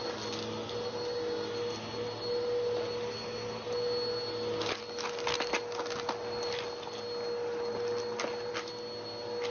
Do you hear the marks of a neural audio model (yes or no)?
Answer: no